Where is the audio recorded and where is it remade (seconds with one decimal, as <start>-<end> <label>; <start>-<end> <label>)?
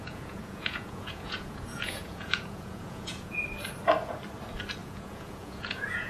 0.0-3.4 remade; 3.4-4.8 recorded; 4.8-6.1 remade